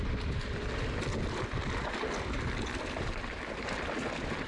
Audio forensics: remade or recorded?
recorded